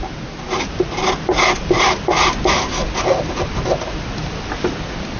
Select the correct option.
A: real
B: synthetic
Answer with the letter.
A